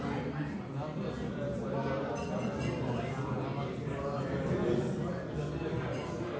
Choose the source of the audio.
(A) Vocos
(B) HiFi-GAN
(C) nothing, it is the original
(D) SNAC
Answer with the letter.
C